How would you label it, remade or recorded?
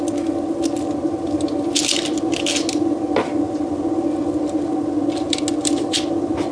recorded